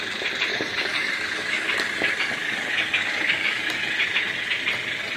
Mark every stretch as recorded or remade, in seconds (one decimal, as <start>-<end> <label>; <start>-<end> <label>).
0.0-0.5 recorded; 0.5-3.6 remade; 3.6-5.2 recorded